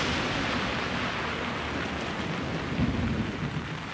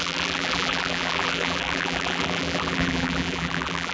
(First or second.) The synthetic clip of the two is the second